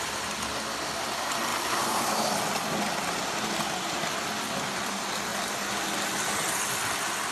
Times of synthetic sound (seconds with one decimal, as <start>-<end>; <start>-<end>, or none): 1.5-2.3